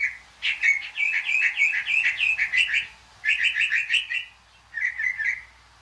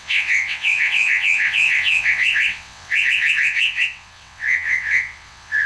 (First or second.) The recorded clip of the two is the first